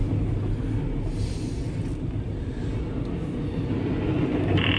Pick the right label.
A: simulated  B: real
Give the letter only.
B